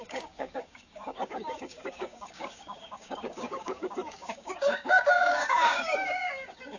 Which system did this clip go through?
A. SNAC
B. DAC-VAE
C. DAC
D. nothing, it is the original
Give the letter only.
C